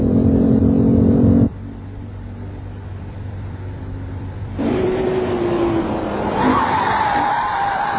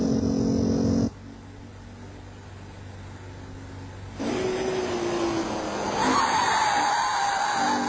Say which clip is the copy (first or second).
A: first